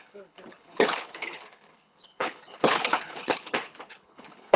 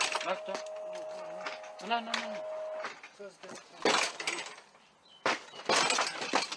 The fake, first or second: first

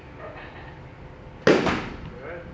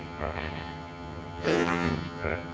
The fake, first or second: second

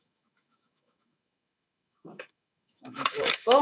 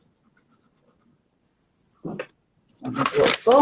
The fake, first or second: first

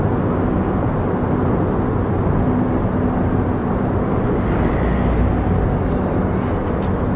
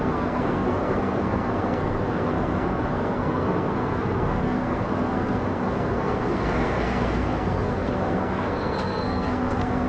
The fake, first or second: second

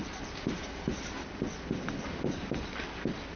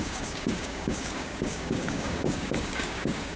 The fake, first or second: second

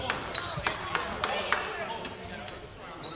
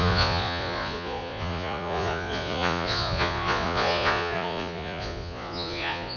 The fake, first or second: second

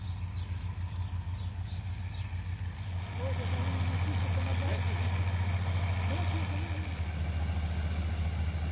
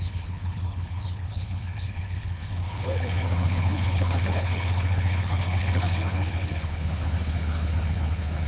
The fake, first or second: second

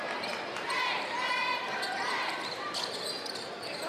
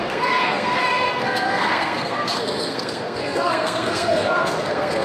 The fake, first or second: second